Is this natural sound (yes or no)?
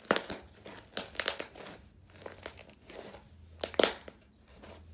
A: yes